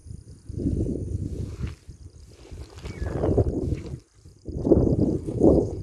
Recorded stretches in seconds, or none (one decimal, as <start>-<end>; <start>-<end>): 0.0-5.2